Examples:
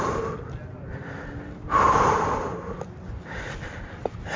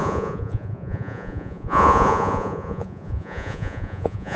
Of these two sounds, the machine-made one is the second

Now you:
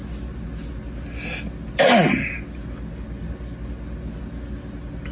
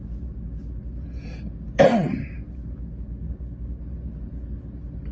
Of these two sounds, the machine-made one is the second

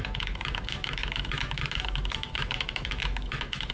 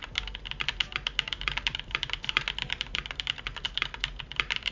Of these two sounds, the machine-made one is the first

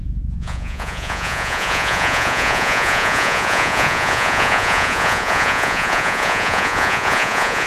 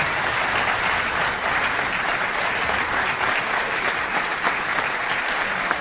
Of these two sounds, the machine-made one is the first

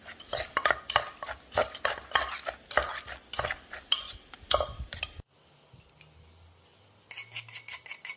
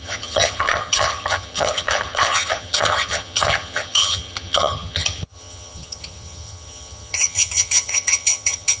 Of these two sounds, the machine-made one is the second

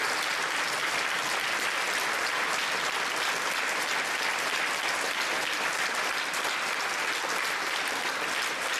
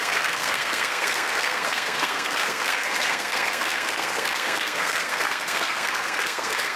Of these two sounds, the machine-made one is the second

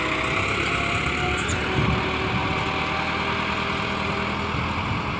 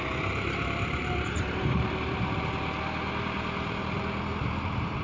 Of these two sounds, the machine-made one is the second